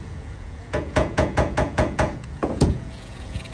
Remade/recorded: remade